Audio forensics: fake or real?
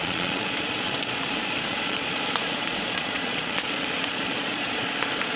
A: fake